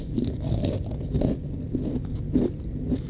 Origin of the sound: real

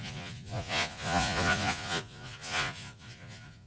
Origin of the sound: fake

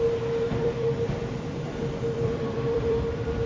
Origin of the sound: fake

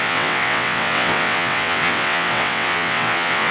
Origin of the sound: fake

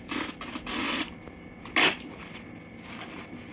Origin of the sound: real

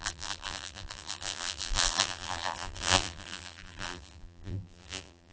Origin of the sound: fake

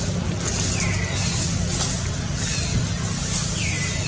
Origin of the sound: real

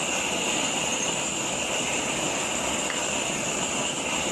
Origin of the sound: real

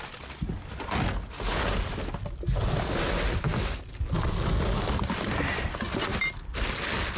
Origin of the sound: real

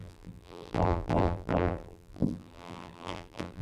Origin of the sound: fake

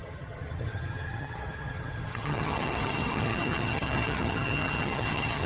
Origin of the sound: fake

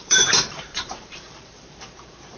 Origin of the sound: fake